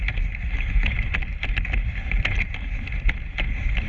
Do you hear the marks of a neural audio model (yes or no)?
no